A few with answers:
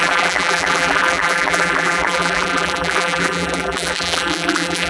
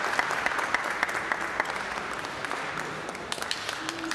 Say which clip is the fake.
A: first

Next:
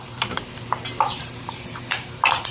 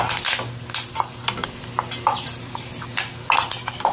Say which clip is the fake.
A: first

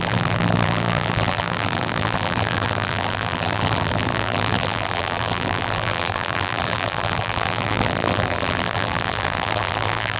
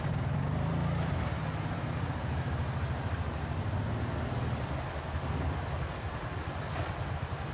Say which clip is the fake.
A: first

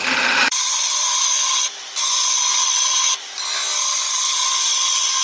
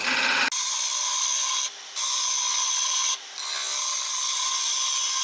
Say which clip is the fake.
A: first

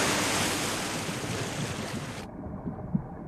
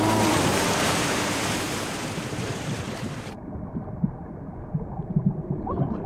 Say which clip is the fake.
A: second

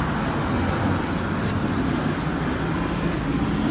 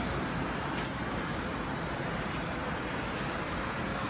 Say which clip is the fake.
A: second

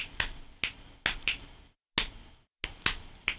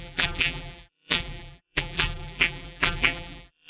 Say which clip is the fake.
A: second